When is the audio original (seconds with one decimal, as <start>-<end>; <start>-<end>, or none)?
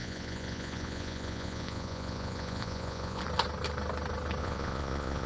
3.2-4.4